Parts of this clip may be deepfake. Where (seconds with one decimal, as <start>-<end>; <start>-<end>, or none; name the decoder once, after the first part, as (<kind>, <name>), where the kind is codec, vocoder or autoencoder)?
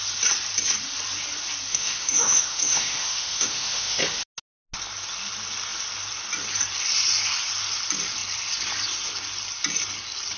1.7-4.0 (autoencoder, DAC-VAE)